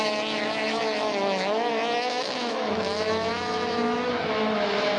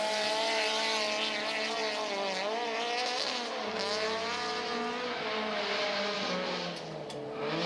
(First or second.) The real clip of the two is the second